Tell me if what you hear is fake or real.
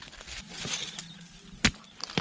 real